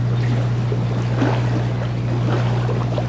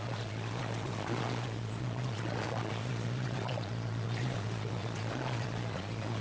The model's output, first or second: second